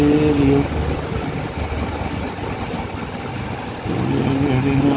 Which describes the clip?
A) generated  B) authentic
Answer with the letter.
B